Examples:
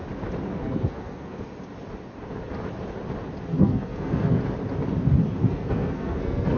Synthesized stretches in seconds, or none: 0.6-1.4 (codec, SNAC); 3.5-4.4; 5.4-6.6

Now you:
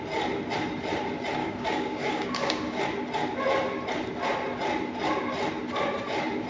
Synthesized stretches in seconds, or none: 1.4-2.8 (codec, DAC)

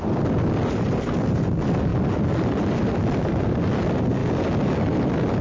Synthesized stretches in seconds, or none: none

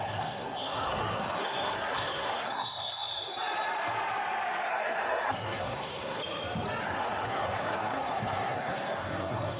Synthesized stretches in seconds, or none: 0.0-3.3 (codec, SNAC); 4.7-6.2; 6.8-9.6

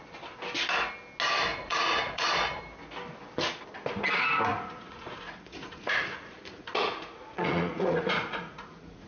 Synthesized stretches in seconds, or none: 1.5-2.2 (vocoder, Vocos); 4.5-9.1

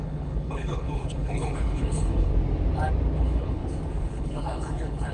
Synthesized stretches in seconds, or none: 0.0-2.3 (codec, HILCodec); 3.2-3.6; 4.1-5.1